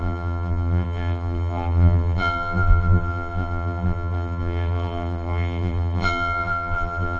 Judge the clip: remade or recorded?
remade